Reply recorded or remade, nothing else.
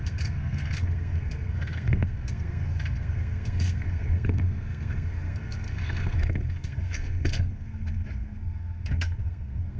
remade